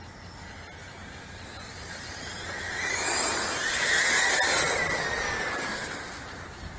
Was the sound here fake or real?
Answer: real